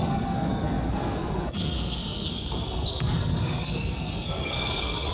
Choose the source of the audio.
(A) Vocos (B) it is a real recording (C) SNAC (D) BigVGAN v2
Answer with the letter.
C